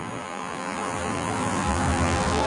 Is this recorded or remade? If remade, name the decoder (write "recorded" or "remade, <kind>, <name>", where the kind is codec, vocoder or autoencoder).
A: remade, vocoder, BigVGAN v2